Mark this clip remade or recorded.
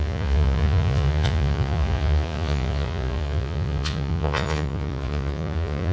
remade